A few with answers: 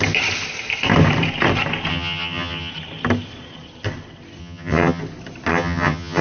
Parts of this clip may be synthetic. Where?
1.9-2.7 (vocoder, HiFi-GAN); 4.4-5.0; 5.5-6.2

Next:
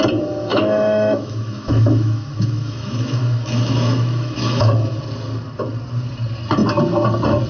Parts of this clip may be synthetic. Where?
0.5-5.0 (autoencoder, DAC-VAE)

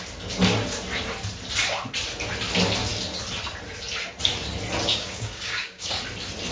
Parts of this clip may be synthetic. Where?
4.9-6.0 (codec, DAC)